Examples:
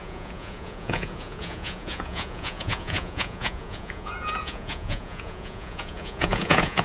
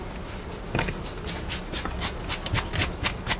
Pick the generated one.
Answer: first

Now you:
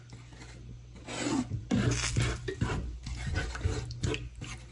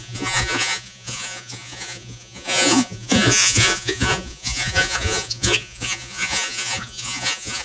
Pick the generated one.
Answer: second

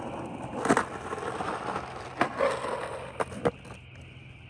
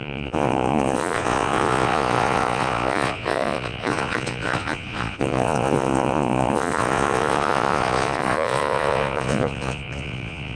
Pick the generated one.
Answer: second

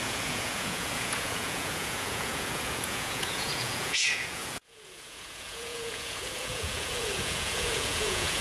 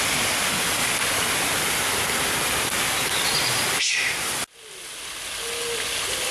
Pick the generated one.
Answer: first